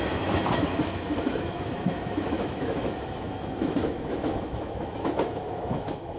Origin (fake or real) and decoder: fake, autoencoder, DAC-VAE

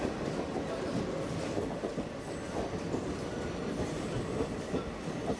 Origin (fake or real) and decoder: real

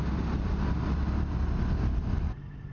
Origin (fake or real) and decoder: real